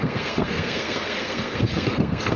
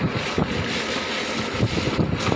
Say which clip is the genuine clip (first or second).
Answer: second